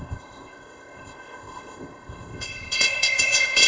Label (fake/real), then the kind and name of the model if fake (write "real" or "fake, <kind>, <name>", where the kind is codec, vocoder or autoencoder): fake, codec, ZipCodec